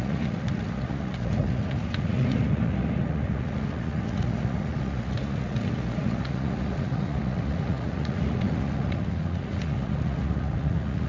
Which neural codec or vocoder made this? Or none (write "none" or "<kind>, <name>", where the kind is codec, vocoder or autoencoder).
vocoder, Vocos